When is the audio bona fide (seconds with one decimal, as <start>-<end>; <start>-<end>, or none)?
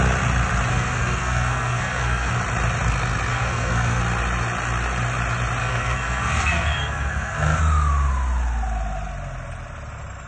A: 0.0-0.7; 2.3-3.3; 4.0-5.6; 7.6-10.3